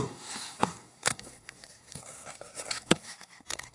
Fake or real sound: fake